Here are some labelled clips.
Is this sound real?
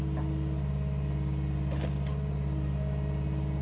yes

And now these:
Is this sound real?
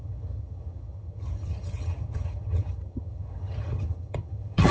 no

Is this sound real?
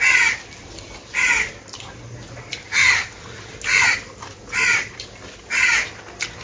yes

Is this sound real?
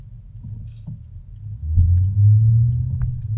yes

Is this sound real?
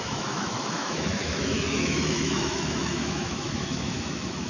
no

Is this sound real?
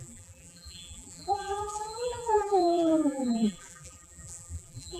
no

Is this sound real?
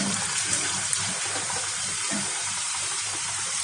no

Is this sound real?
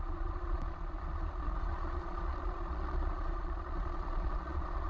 no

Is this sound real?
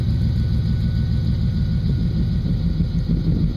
yes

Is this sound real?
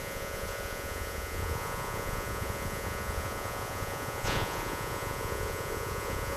no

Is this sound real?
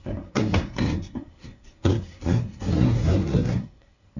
no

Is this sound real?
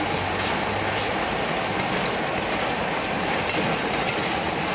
yes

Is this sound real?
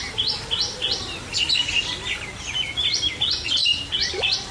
yes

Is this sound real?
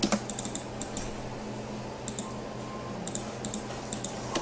yes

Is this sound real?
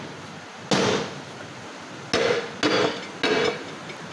yes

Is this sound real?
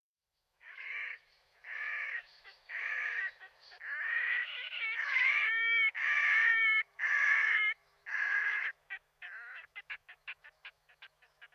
no